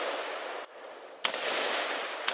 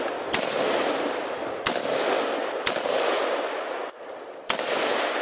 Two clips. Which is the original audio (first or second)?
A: first